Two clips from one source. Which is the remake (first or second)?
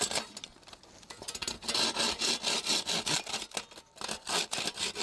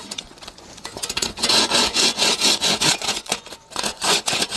second